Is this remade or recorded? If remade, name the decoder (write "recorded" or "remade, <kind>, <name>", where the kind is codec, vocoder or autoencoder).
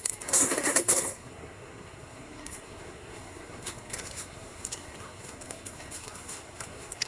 remade, codec, SNAC